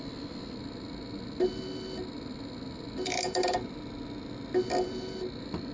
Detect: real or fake real